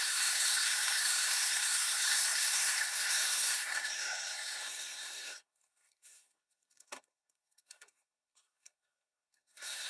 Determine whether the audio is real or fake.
fake